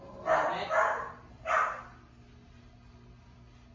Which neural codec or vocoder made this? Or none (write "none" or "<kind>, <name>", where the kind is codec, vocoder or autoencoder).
none